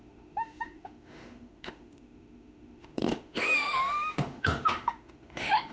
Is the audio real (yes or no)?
no